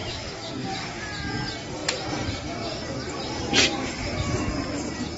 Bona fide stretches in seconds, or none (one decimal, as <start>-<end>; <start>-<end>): 0.5-5.2